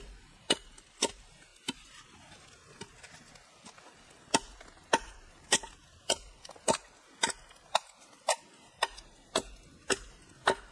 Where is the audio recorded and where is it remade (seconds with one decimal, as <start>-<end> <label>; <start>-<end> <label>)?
0.0-10.7 recorded